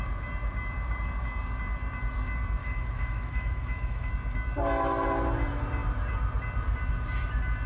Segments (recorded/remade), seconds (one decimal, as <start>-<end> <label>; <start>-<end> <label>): 0.0-2.6 recorded; 2.6-4.1 remade; 4.1-7.7 recorded